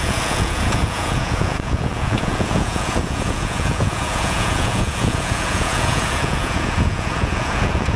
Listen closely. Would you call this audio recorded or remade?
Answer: remade